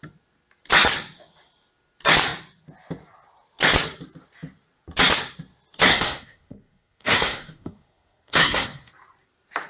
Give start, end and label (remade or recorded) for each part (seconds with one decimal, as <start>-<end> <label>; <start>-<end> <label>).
0.0-5.9 recorded; 5.9-8.9 remade; 8.9-9.7 recorded